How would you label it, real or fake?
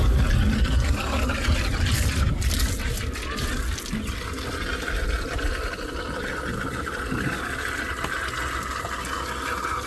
real